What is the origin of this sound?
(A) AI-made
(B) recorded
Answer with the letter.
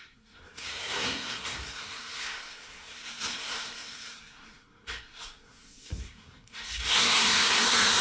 A